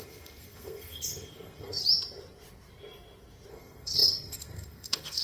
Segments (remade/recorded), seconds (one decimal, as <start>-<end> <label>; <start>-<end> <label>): 0.0-1.8 remade; 1.8-3.5 recorded; 3.5-5.2 remade